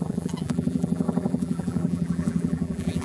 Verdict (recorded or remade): remade